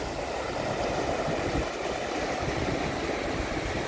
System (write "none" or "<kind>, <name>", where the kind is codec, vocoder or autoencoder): none